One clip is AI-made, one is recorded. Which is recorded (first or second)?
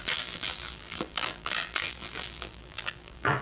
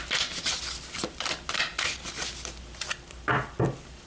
second